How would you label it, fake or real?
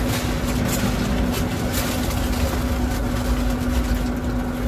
real